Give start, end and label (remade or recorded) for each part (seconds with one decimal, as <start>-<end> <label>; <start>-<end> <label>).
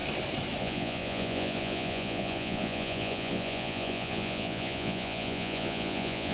0.0-0.6 recorded; 0.6-6.3 remade